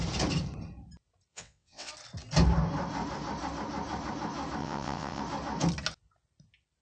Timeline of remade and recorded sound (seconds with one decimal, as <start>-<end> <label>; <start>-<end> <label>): 0.0-1.3 recorded; 1.3-1.9 remade; 1.9-4.6 recorded; 4.6-5.2 remade; 5.2-6.8 recorded